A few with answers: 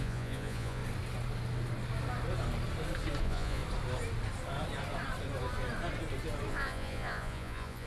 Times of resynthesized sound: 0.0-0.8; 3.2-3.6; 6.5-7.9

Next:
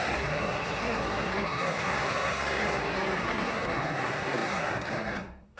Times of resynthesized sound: 0.0-5.6

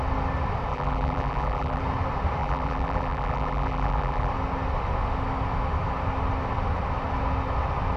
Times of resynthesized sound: 0.7-1.8; 2.4-4.3